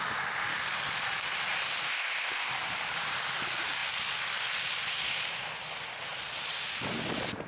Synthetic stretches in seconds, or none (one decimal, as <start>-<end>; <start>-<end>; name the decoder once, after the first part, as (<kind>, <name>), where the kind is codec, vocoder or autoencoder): 1.9-2.5 (codec, ZipCodec)